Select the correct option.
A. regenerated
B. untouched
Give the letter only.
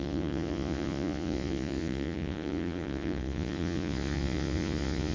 A